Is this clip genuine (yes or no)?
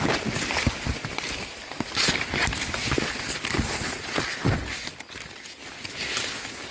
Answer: yes